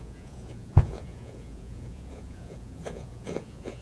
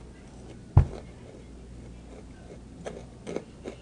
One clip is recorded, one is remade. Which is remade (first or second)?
first